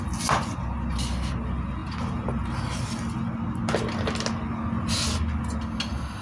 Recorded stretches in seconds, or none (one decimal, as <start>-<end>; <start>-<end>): 0.0-6.2